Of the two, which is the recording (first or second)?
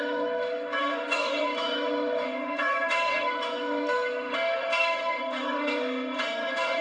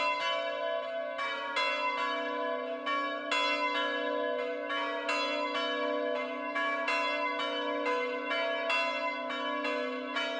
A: second